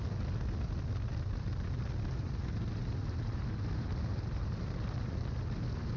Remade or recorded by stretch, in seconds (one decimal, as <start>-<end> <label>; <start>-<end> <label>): 0.0-6.0 recorded